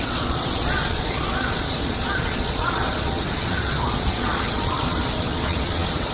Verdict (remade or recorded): remade